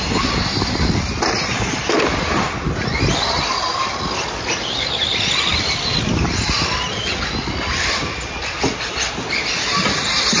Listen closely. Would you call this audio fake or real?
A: real